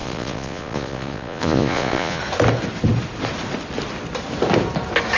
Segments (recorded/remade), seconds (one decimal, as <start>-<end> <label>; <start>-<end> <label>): 0.0-2.2 remade; 2.2-5.2 recorded